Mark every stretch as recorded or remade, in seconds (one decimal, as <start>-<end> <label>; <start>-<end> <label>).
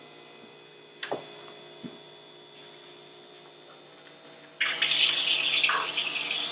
0.0-6.5 recorded